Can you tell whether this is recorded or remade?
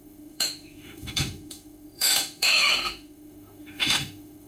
remade